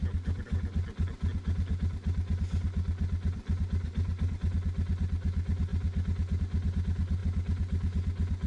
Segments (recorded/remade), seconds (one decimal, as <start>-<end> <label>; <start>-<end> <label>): 0.0-8.5 recorded